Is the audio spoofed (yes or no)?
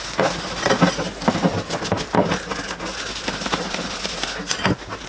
no